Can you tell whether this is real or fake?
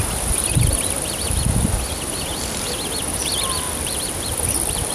fake